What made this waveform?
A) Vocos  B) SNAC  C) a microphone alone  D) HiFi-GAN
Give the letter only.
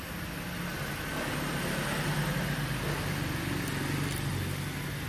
C